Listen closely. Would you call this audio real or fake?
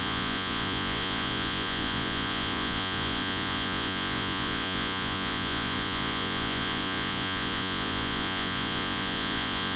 fake